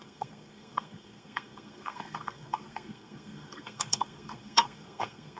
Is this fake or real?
fake